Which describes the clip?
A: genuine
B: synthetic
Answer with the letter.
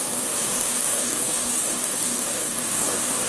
B